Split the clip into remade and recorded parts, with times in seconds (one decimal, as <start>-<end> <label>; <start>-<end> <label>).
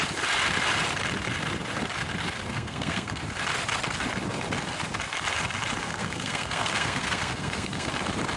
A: 0.0-2.5 recorded; 2.5-3.2 remade; 3.2-5.8 recorded; 5.8-7.9 remade; 7.9-8.4 recorded